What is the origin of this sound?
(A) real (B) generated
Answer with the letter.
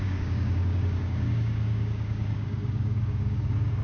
B